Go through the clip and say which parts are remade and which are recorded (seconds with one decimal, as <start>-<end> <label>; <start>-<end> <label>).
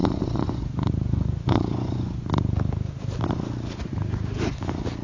0.0-2.3 remade; 2.3-5.0 recorded